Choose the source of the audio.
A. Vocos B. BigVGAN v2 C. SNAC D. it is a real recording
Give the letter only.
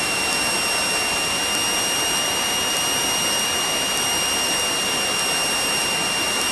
D